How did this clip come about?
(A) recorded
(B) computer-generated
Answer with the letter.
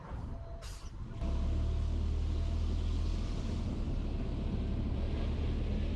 A